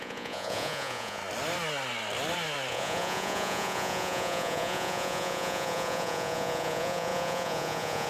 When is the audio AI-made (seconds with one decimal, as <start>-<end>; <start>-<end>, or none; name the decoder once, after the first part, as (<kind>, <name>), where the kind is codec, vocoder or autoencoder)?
0.0-1.2 (vocoder, Vocos); 2.7-8.1